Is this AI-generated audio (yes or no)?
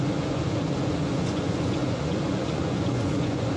yes